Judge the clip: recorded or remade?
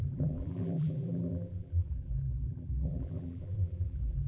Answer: remade